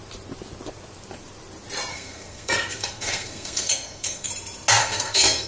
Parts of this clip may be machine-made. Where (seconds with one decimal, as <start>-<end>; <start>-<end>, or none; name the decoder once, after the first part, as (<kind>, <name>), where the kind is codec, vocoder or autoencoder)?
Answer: 1.9-4.3 (codec, SNAC); 4.8-5.5